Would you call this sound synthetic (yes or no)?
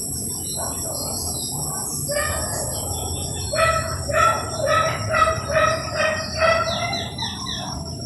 yes